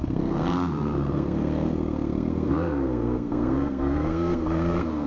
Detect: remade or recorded remade